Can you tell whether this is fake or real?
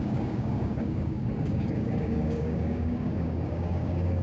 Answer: fake